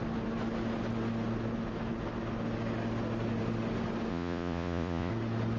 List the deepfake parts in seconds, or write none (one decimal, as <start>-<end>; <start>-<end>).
4.1-5.1